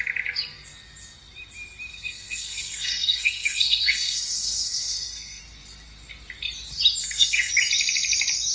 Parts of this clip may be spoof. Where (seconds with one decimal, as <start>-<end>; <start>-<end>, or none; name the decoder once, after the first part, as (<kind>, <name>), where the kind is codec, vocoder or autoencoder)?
1.9-5.4 (codec, SNAC); 7.0-7.5